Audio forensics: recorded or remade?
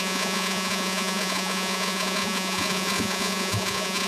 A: remade